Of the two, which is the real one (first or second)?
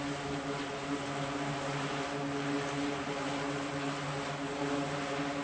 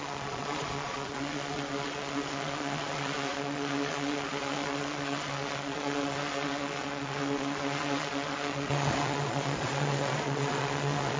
first